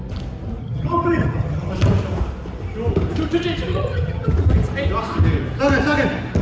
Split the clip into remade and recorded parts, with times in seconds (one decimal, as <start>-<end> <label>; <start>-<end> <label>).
0.0-0.6 recorded; 0.6-1.7 remade; 1.7-3.7 recorded; 3.7-4.3 remade; 4.3-6.4 recorded